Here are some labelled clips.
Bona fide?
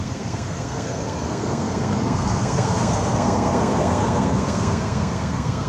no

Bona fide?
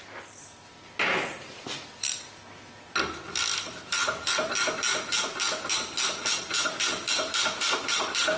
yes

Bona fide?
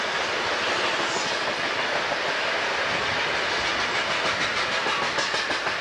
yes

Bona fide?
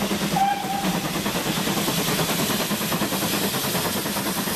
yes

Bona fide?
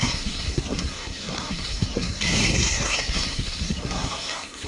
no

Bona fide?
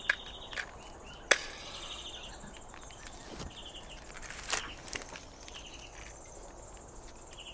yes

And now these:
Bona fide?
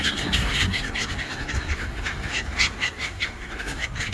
no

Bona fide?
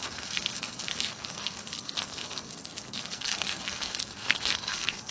no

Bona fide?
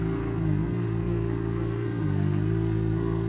no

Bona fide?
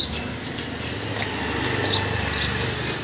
yes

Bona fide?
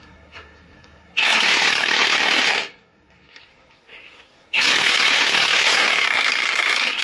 no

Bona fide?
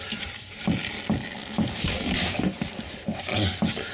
yes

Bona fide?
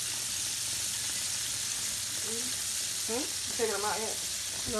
yes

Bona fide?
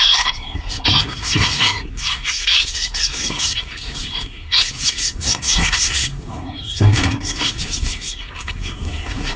no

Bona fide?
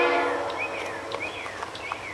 yes